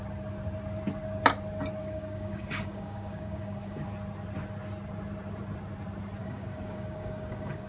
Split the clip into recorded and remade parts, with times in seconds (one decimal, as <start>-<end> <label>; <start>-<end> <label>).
0.0-1.8 recorded; 1.8-3.8 remade; 3.8-6.2 recorded; 6.2-7.7 remade